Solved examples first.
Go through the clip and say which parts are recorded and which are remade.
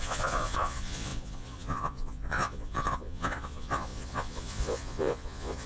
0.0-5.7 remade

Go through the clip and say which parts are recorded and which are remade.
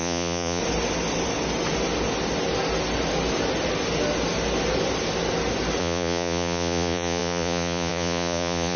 0.0-0.6 remade; 0.6-5.8 recorded; 5.8-8.8 remade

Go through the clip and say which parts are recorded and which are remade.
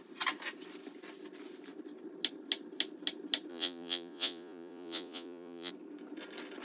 0.0-3.5 recorded; 3.5-5.7 remade; 5.7-6.6 recorded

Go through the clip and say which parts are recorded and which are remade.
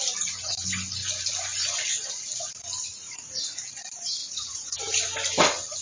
0.0-3.0 recorded; 3.0-3.6 remade; 3.6-4.2 recorded; 4.2-4.8 remade; 4.8-5.8 recorded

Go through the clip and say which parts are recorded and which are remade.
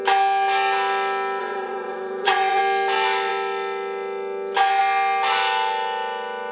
0.0-1.4 recorded; 1.4-2.6 remade; 2.6-6.5 recorded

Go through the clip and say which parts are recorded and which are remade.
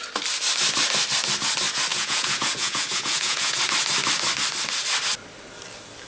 0.0-1.9 recorded; 1.9-3.6 remade; 3.6-6.1 recorded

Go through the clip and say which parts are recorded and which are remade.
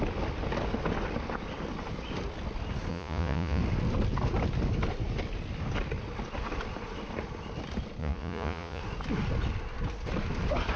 0.0-2.9 recorded; 2.9-3.6 remade; 3.6-8.0 recorded; 8.0-8.8 remade; 8.8-10.8 recorded